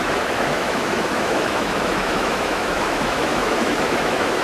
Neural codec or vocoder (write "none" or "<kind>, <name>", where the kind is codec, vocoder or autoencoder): autoencoder, DAC-VAE